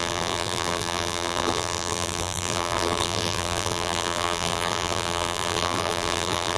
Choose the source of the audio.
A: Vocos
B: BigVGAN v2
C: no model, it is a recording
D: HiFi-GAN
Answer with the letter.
B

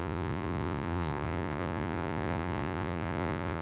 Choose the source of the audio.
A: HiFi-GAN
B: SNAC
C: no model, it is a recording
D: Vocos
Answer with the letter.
D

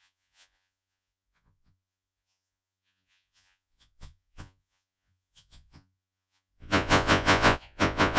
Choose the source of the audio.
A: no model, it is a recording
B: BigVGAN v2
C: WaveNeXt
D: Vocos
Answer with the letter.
D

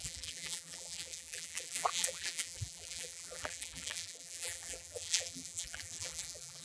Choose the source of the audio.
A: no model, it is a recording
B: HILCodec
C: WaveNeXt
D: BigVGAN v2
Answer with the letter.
D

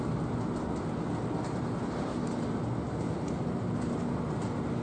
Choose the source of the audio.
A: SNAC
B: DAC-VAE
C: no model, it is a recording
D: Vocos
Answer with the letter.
C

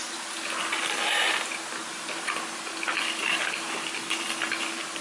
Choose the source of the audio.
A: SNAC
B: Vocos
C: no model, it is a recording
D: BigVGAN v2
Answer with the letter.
C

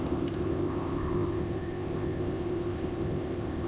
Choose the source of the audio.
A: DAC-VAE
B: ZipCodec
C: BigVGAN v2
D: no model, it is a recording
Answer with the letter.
B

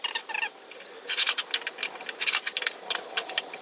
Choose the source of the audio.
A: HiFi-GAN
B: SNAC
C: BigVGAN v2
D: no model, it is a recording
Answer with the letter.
D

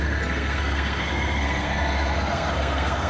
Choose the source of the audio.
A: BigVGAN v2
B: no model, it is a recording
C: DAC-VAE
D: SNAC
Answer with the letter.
D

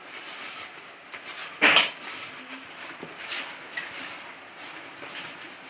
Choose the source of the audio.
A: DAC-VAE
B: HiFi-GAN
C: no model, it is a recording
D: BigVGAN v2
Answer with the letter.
C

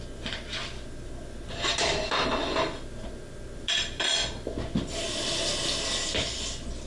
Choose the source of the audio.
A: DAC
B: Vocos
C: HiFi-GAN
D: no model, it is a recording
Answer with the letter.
D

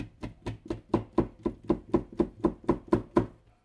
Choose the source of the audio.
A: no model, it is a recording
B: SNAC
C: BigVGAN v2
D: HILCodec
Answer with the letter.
A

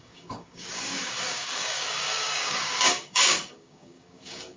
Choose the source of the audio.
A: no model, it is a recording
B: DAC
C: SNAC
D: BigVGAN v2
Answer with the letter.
B